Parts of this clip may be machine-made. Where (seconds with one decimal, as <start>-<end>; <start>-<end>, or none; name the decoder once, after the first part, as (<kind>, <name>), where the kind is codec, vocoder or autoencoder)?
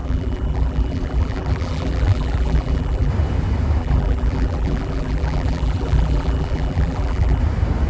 0.0-3.1 (vocoder, BigVGAN v2); 3.8-7.4